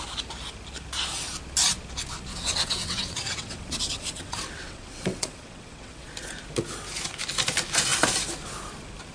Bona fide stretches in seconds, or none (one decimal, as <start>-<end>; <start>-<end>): 0.0-2.3; 6.1-9.1